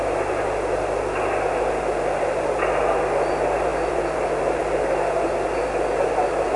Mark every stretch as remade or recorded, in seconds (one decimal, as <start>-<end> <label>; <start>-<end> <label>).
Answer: 0.0-3.7 recorded; 3.7-6.6 remade